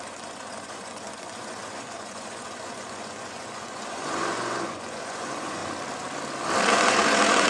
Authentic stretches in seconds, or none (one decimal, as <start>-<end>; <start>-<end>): 5.6-6.7

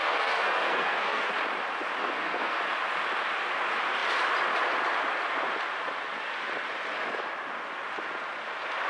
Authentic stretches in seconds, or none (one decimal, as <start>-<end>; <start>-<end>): 1.3-2.0; 2.6-8.9